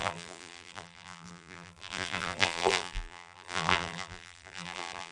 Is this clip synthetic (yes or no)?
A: yes